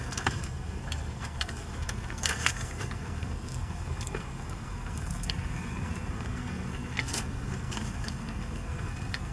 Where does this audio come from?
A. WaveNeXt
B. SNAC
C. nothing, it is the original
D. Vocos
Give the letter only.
B